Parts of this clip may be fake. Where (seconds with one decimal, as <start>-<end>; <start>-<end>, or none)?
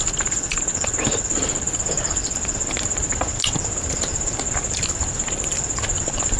none